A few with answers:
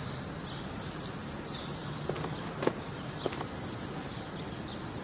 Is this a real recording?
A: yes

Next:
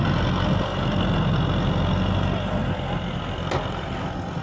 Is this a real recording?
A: yes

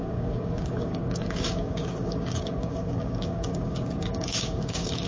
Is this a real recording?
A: no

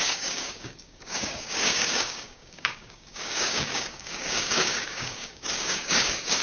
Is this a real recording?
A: no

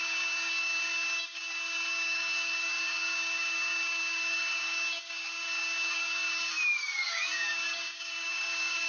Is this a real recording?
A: no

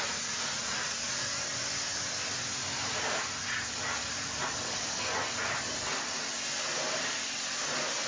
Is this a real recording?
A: yes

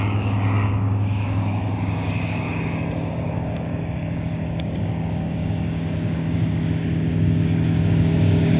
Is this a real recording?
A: no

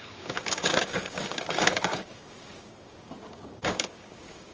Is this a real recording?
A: no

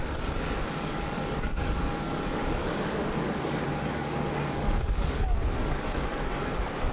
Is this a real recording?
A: no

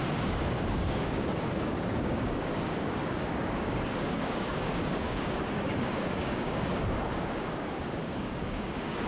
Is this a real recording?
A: no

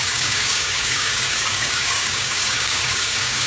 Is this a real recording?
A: no